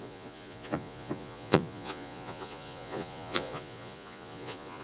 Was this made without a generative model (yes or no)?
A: no